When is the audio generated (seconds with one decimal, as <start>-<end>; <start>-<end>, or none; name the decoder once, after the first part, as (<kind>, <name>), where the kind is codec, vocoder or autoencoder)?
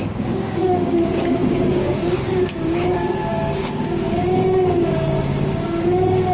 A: 0.0-6.3 (codec, DAC)